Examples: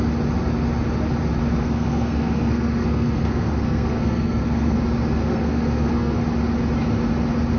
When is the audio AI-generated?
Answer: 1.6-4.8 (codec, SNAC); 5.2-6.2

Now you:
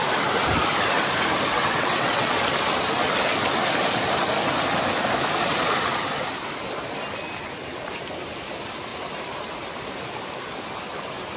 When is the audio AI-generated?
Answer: 1.5-2.3 (vocoder, WaveNeXt)

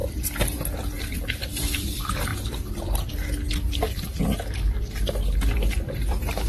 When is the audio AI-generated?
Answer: 1.5-2.3 (vocoder, BigVGAN v2); 4.8-6.5

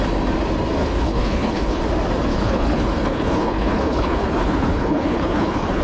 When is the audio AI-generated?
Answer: 0.8-1.8 (codec, HILCodec); 2.3-5.8

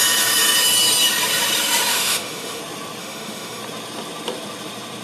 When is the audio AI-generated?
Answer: 1.9-2.6 (autoencoder, DAC-VAE); 3.0-3.6

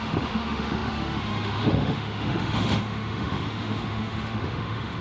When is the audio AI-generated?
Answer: 0.0-5.0 (autoencoder, DAC-VAE)

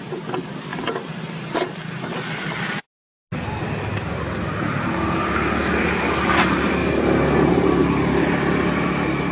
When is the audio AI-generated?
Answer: none